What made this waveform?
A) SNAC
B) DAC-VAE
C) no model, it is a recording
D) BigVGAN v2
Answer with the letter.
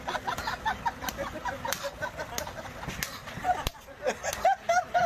C